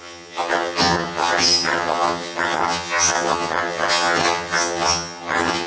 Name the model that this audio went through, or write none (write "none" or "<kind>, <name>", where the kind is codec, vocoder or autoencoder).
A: vocoder, HiFi-GAN